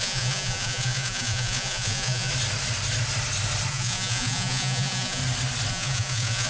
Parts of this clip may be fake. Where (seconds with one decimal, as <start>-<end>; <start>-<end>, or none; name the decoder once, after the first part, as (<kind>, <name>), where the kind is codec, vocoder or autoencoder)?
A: 0.0-2.3 (vocoder, Vocos); 3.7-5.2; 5.7-6.5